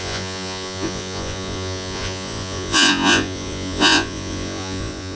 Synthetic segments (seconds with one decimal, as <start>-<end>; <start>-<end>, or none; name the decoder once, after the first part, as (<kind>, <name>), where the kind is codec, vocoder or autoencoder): 0.0-5.2 (vocoder, Vocos)